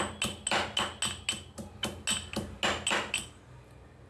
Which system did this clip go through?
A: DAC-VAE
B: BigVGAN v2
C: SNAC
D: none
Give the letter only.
D